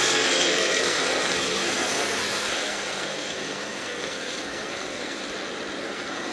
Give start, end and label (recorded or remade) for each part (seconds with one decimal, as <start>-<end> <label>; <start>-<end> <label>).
0.0-5.2 remade; 5.2-5.8 recorded; 5.8-6.3 remade